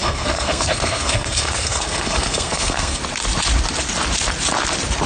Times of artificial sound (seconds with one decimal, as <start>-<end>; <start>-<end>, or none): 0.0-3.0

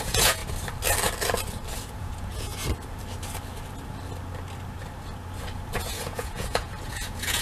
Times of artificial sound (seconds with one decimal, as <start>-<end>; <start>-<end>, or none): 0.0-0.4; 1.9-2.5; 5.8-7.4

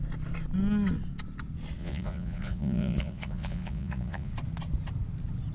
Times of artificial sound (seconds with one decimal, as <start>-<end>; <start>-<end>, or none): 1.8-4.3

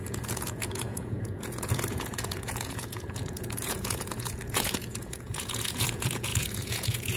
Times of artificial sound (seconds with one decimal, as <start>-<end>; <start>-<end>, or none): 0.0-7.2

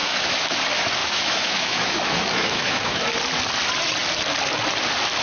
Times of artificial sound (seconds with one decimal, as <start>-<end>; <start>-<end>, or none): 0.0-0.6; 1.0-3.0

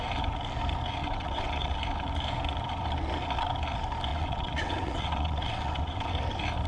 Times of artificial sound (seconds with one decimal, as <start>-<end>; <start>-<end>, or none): 1.0-1.7; 4.1-6.1

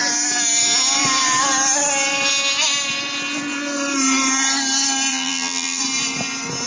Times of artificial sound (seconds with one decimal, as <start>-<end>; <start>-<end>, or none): 5.1-5.8